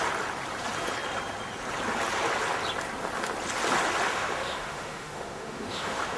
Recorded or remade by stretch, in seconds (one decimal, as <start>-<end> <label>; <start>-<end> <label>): 0.0-4.1 recorded; 4.1-6.2 remade